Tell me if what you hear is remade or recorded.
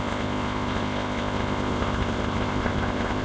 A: remade